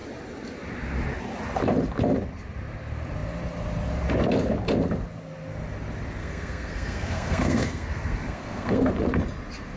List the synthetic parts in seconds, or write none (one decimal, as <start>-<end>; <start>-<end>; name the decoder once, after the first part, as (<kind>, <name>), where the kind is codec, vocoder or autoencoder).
6.2-8.9 (codec, SNAC)